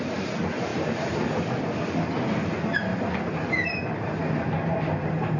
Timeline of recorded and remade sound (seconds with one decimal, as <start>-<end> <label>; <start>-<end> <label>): 0.0-0.7 recorded; 0.7-1.6 remade; 1.6-2.9 recorded; 2.9-5.4 remade

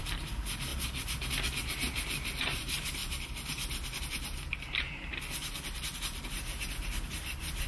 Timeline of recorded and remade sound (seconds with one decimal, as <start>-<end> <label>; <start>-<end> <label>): 0.0-0.7 remade; 0.7-2.4 recorded; 2.4-3.0 remade; 3.0-4.0 recorded; 4.0-7.7 remade

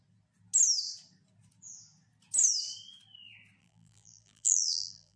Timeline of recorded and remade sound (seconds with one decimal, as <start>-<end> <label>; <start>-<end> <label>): 0.0-3.6 recorded; 3.6-5.2 remade

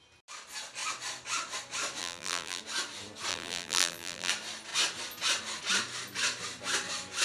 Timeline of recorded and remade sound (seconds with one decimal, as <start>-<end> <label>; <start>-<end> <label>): 0.0-2.0 recorded; 2.0-2.6 remade; 2.6-3.3 recorded; 3.3-4.3 remade; 4.3-7.2 recorded

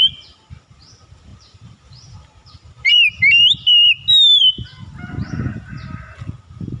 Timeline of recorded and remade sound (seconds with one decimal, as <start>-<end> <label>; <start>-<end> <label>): 0.0-1.3 recorded; 1.3-3.4 remade; 3.4-6.8 recorded

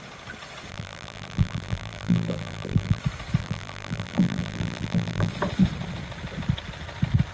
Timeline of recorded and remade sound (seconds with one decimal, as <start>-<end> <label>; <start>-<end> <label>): 0.0-0.7 recorded; 0.7-3.0 remade; 3.0-3.4 recorded; 3.4-5.3 remade; 5.3-7.3 recorded